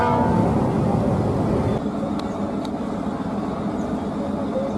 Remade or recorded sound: recorded